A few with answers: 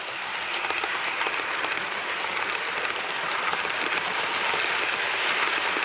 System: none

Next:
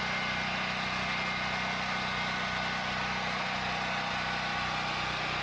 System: none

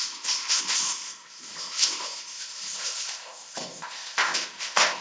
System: codec, ZipCodec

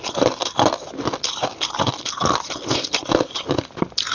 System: none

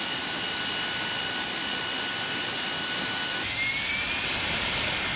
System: none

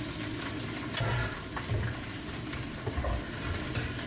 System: none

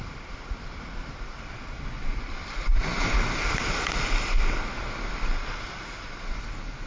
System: none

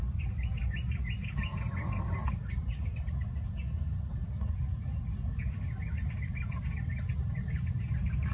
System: none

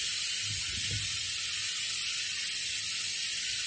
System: none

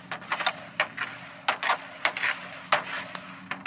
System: none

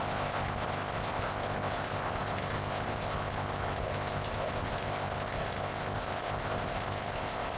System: codec, ZipCodec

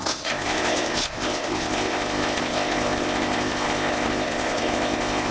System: codec, ZipCodec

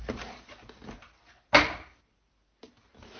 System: none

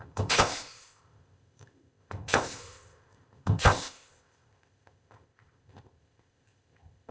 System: codec, ZipCodec